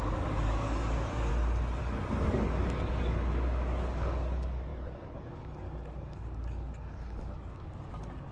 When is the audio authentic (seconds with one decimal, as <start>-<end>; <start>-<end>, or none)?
1.3-1.8